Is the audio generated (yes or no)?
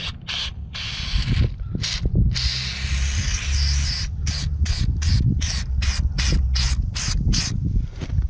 no